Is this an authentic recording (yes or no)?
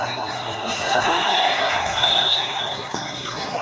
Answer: no